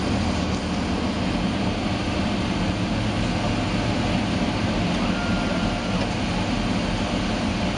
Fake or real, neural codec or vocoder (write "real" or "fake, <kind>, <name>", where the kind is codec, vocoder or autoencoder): real